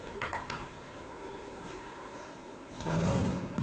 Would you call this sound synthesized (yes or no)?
yes